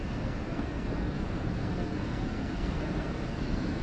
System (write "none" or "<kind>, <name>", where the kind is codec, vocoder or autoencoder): codec, SNAC